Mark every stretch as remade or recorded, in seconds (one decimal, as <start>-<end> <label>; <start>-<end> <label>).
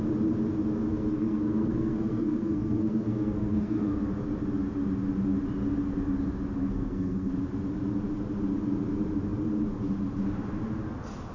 0.0-0.9 recorded; 0.9-4.1 remade; 4.1-6.6 recorded; 6.6-7.3 remade; 7.3-11.3 recorded